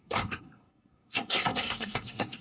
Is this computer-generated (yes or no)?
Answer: yes